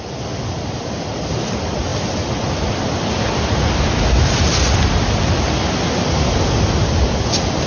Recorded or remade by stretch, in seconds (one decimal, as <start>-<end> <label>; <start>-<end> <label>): 0.0-7.7 recorded